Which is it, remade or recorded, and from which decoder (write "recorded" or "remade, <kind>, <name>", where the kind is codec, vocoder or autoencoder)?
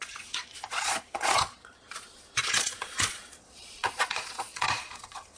remade, vocoder, Vocos